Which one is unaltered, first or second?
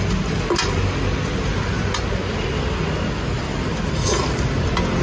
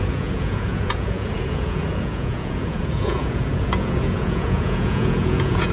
first